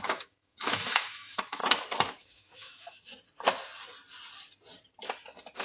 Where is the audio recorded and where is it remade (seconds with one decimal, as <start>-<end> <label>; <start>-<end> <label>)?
0.0-1.6 remade; 1.6-2.1 recorded; 2.1-3.1 remade; 3.1-5.6 recorded